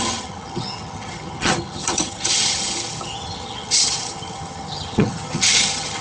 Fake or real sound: fake